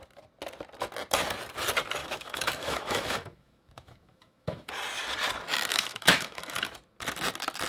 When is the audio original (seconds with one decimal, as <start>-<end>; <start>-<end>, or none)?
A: 0.0-2.0; 4.7-5.7; 6.7-7.7